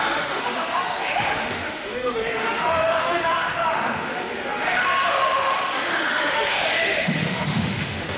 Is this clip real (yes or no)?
no